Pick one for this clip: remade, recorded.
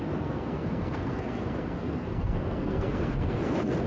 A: remade